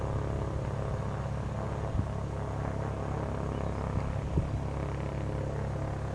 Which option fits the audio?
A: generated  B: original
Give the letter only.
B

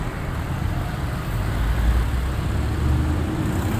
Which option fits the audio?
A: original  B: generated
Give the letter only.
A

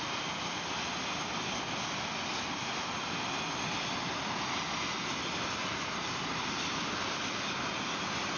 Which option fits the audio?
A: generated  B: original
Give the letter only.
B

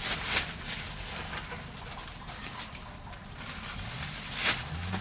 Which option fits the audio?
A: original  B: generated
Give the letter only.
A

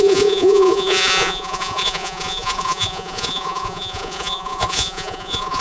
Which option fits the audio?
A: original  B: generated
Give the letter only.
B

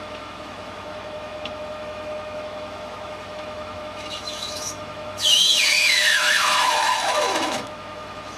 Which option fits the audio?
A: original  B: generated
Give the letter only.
B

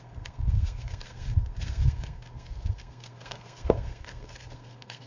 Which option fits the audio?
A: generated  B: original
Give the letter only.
A